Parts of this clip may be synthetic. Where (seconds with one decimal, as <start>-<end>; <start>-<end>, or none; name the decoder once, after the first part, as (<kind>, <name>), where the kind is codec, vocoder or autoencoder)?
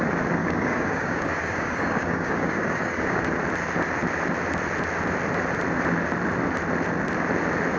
0.4-3.2 (codec, DAC)